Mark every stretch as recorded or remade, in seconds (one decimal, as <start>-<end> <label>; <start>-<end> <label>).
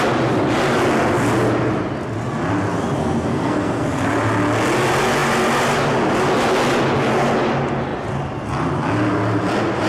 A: 0.0-3.0 recorded; 3.0-4.1 remade; 4.1-9.9 recorded